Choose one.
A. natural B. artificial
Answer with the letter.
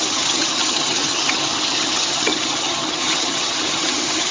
B